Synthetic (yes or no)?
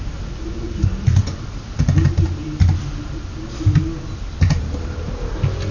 no